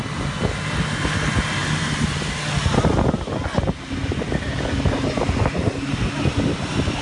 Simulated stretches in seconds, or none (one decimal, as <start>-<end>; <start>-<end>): none